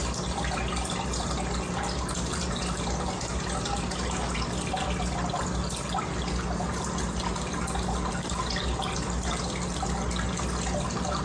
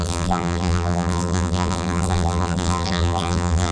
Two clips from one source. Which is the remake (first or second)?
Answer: second